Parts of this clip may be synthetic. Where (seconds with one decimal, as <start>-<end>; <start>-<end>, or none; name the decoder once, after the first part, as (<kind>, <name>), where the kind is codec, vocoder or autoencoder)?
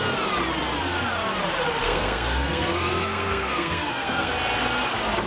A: 1.8-4.3 (codec, SNAC)